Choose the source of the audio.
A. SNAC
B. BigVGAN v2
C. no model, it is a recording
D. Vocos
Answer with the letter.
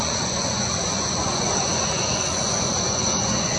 D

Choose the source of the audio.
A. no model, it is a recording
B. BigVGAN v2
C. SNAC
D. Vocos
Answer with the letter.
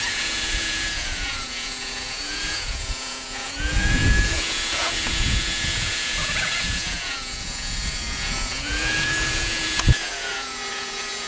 D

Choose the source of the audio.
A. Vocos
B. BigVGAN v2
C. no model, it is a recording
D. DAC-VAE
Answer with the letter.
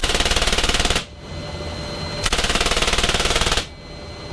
C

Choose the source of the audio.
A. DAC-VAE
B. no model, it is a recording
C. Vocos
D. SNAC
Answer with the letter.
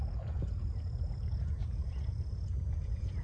C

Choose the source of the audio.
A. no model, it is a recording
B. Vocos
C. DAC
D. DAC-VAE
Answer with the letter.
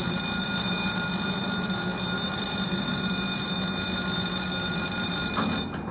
A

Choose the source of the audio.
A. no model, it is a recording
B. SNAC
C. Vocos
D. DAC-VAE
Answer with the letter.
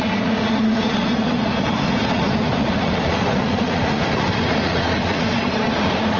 C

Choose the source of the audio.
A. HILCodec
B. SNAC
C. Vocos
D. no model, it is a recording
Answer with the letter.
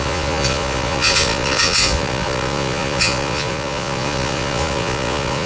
C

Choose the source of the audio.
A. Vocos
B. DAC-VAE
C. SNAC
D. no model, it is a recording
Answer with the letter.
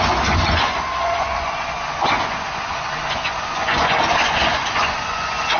A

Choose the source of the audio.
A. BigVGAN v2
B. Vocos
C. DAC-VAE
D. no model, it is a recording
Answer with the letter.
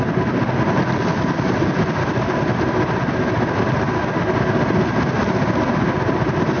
D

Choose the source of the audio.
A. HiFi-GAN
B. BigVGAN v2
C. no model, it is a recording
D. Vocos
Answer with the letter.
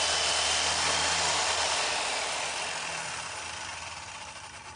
C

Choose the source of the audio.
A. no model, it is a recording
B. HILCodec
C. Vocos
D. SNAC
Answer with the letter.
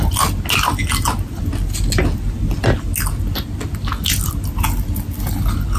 A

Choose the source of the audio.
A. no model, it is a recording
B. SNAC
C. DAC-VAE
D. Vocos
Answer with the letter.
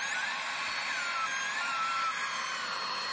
A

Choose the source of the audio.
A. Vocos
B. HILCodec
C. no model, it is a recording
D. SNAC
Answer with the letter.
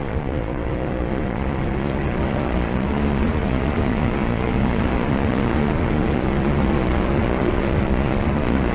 A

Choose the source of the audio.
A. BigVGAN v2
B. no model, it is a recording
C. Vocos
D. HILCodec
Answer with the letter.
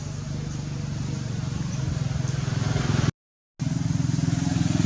B